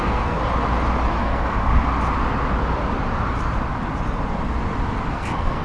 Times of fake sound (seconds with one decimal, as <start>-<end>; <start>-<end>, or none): 0.0-0.4; 1.2-1.7; 5.1-5.6